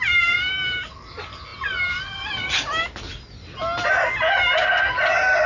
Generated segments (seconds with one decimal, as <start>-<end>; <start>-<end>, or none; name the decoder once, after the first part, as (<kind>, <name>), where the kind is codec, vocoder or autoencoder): none